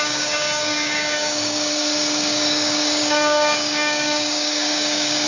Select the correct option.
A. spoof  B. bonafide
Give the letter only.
A